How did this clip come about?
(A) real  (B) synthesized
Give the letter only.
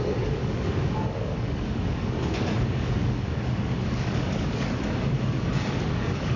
B